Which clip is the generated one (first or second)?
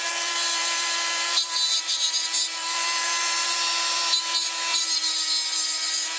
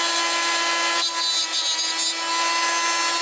first